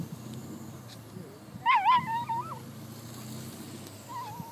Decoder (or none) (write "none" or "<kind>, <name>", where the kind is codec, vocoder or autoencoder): none